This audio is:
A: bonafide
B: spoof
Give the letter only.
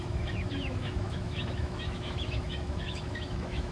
B